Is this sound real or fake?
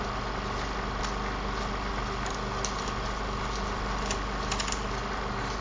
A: real